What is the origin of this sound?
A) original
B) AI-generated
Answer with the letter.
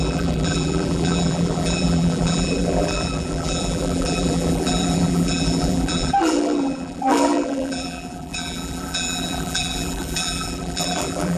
B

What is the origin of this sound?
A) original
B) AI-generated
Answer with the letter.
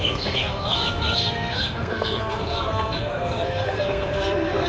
B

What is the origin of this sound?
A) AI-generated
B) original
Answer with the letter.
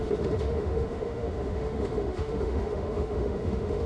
A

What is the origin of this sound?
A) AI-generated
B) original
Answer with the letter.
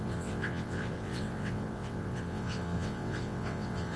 A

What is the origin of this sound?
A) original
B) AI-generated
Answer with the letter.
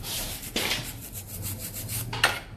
A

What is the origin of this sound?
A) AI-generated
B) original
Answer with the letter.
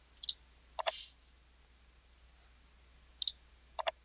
B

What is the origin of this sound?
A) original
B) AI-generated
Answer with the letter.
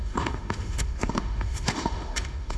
B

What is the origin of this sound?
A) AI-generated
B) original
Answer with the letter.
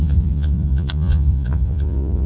A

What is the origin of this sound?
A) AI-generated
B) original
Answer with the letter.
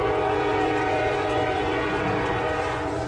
A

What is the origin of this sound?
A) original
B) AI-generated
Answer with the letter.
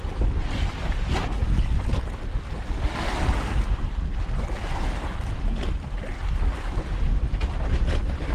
A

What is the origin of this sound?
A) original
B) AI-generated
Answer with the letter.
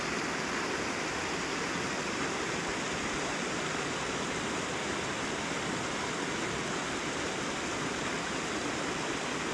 A